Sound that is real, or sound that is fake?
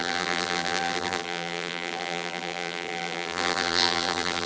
fake